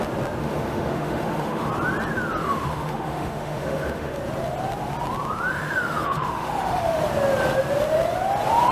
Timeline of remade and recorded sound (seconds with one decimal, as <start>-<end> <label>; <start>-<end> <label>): 0.0-0.4 recorded; 0.4-1.7 remade; 1.7-2.4 recorded; 2.4-4.2 remade; 4.2-5.5 recorded; 5.5-7.0 remade; 7.0-8.7 recorded